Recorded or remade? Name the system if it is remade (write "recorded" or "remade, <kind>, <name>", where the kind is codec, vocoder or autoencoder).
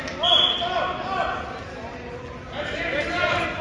recorded